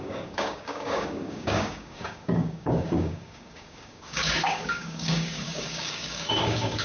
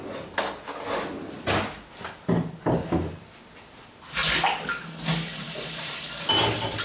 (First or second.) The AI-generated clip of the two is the first